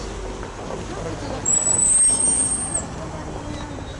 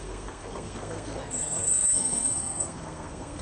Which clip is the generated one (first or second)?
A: second